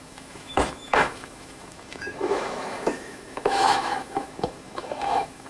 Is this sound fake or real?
fake